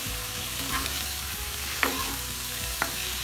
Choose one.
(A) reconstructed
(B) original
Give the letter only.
A